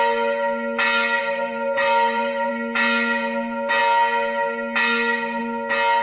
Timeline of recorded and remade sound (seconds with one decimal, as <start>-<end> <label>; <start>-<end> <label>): 0.0-1.2 recorded; 1.2-2.5 remade; 2.5-6.0 recorded